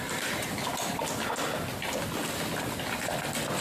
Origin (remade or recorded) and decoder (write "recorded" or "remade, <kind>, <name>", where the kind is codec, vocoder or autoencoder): recorded